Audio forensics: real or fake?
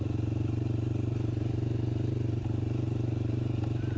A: fake